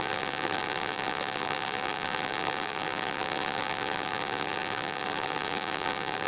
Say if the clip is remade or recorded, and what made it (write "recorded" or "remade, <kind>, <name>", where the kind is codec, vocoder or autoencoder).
remade, vocoder, BigVGAN v2